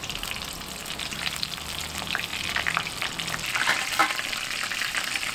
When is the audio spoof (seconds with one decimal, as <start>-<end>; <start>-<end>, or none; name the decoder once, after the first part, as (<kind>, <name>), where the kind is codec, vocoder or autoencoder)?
0.8-1.8 (vocoder, BigVGAN v2); 2.3-2.9; 4.0-5.3